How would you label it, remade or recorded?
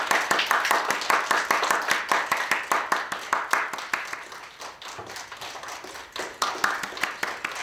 recorded